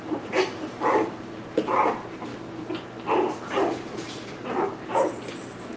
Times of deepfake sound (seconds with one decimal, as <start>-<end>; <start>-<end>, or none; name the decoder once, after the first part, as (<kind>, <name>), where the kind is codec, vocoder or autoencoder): 0.0-2.3 (vocoder, BigVGAN v2); 3.4-5.8